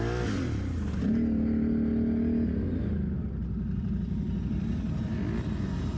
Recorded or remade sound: recorded